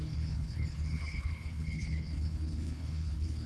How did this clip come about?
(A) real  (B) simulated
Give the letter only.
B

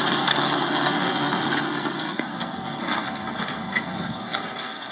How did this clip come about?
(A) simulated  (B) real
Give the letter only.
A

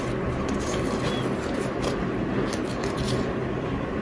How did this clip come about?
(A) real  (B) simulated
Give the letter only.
A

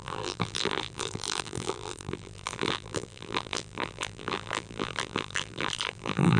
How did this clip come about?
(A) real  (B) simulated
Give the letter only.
B